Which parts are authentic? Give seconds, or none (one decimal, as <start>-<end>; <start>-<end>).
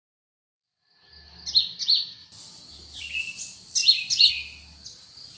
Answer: 0.0-2.2; 3.0-3.8; 4.3-5.4